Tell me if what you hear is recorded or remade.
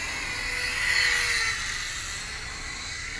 recorded